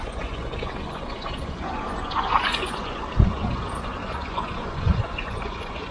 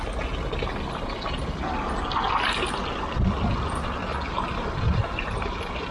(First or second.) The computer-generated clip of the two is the first